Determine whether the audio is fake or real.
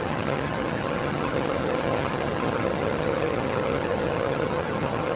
fake